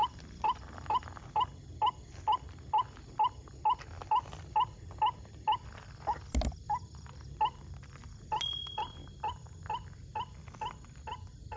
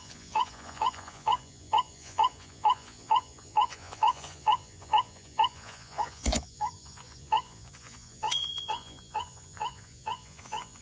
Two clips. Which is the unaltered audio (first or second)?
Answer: first